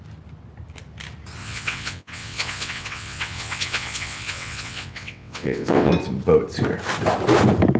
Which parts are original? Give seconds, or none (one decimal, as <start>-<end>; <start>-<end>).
0.0-1.4; 5.9-7.8